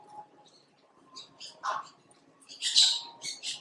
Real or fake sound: fake